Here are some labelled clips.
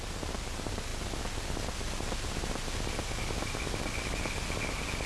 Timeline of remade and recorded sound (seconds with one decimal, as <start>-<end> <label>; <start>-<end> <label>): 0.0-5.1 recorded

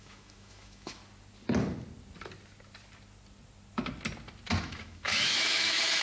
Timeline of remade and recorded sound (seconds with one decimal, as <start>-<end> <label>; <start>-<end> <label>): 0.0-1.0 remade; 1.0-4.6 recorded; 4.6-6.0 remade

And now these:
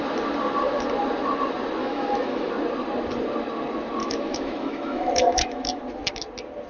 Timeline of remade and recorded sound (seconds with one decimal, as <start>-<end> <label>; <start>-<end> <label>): 0.0-1.8 recorded; 1.8-2.5 remade; 2.5-4.0 recorded; 4.0-5.8 remade; 5.8-6.7 recorded

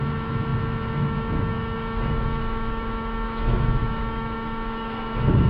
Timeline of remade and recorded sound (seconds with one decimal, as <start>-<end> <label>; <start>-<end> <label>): 0.0-5.5 remade

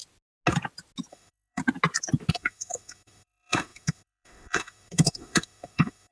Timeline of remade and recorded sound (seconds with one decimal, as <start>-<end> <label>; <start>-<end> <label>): 0.0-1.1 recorded; 1.1-1.6 remade; 1.6-2.3 recorded; 2.3-6.1 remade